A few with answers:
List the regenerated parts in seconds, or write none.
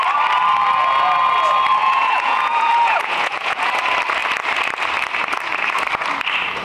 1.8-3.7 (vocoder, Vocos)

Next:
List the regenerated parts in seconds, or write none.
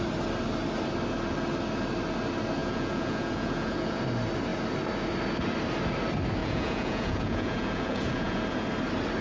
2.6-4.0 (vocoder, Vocos); 6.4-8.4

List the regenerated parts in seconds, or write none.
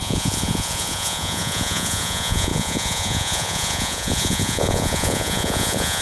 0.0-6.0 (vocoder, Vocos)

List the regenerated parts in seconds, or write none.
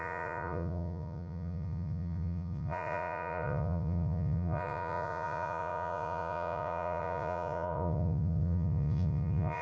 0.0-9.6 (vocoder, Vocos)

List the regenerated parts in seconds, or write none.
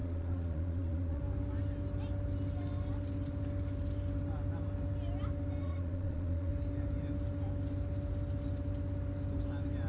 0.0-1.2 (vocoder, Vocos); 5.6-6.5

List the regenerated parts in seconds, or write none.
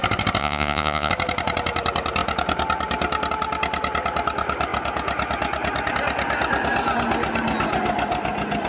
0.4-1.1 (vocoder, Vocos)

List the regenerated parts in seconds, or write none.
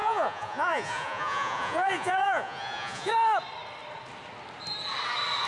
0.0-3.1 (vocoder, Vocos)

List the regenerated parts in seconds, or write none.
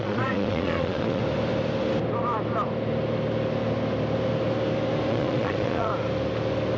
0.0-1.2 (vocoder, Vocos); 5.1-5.9